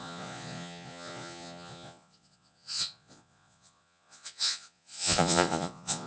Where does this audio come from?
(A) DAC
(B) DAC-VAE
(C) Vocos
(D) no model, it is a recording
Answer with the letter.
C